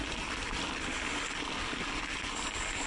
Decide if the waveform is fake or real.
real